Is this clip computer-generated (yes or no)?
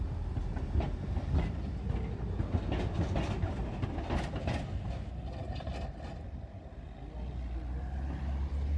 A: no